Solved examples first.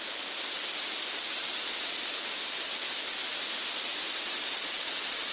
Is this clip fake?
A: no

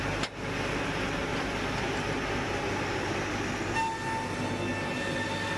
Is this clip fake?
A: no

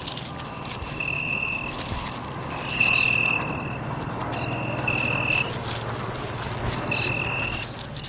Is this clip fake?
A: no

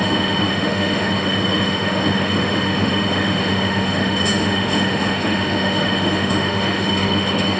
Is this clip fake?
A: yes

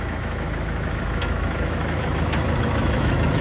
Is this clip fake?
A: yes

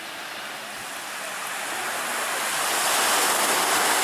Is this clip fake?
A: no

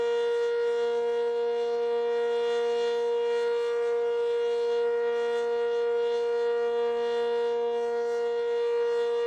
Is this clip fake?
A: no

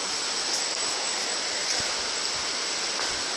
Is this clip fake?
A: no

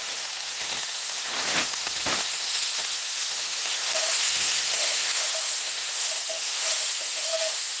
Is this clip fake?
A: yes